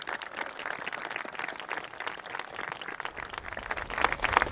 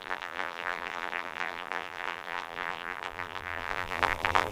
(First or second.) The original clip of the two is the first